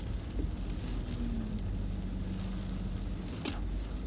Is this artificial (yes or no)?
no